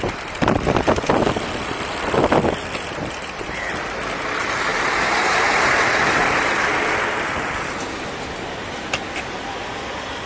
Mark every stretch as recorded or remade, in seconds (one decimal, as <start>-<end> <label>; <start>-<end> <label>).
0.0-10.3 recorded